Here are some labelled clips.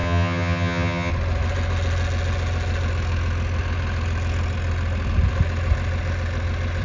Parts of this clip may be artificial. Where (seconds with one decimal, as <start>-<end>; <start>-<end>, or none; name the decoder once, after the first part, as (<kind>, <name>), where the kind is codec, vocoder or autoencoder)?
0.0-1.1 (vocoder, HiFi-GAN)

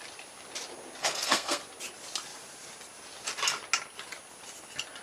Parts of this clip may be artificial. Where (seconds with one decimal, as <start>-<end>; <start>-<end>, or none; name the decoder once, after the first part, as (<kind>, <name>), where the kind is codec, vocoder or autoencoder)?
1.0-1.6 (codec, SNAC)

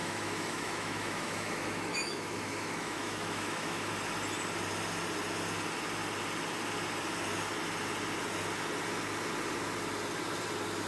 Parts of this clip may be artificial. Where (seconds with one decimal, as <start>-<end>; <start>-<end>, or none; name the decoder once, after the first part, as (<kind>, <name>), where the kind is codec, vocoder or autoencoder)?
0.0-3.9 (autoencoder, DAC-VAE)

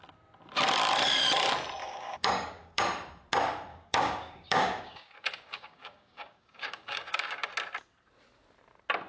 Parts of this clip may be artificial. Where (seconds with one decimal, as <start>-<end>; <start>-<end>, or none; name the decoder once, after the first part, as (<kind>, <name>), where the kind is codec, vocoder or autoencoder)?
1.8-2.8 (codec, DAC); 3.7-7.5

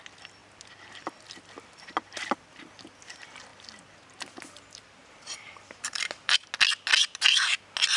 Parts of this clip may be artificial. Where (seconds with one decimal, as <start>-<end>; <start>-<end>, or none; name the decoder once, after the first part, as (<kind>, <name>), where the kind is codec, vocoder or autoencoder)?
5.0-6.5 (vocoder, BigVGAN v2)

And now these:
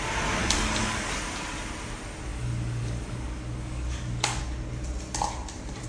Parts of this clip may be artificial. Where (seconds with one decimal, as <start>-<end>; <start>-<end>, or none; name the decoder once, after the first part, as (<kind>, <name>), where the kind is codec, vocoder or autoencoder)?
0.4-1.1 (codec, DAC); 2.3-4.4

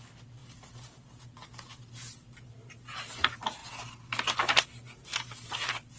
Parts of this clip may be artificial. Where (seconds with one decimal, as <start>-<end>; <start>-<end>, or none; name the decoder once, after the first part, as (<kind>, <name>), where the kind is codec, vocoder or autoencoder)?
none

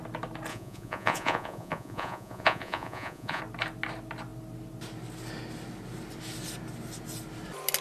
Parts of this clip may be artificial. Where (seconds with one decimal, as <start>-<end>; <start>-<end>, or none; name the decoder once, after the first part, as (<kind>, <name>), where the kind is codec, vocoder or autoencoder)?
0.5-3.4 (vocoder, Vocos)